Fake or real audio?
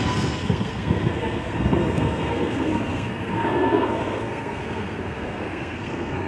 fake